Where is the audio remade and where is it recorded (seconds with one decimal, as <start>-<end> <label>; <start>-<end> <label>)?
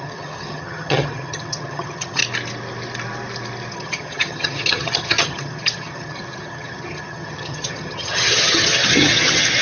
0.0-2.2 remade; 2.2-3.7 recorded; 3.7-9.6 remade